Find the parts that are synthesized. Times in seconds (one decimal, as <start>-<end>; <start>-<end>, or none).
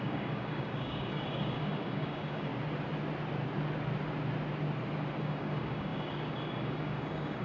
0.0-2.5; 5.2-7.4